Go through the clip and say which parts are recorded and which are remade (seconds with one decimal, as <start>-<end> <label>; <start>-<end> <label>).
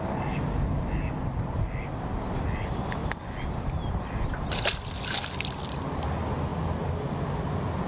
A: 0.0-7.9 recorded